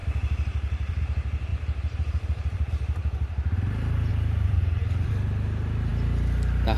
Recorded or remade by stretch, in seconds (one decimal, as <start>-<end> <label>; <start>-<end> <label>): 0.0-1.0 remade; 1.0-1.5 recorded; 1.5-2.7 remade; 2.7-4.1 recorded; 4.1-5.1 remade; 5.1-6.8 recorded